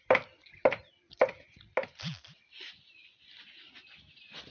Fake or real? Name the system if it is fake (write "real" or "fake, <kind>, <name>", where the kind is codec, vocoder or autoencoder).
real